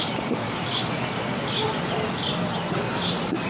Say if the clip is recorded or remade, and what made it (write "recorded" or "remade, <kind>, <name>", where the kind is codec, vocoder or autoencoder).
recorded